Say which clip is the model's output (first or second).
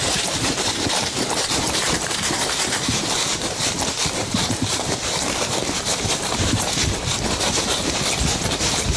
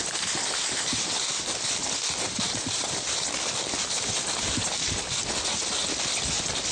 first